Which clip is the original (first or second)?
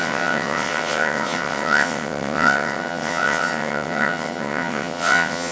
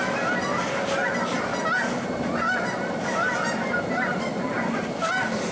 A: second